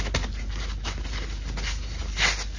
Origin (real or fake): real